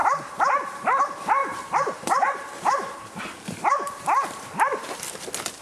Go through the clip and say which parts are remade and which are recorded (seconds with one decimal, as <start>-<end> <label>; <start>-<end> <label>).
0.0-1.0 remade; 1.0-1.4 recorded; 1.4-4.8 remade; 4.8-5.6 recorded